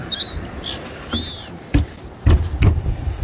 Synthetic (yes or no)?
no